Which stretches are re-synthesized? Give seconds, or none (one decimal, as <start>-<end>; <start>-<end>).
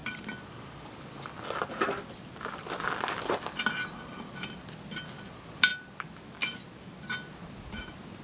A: none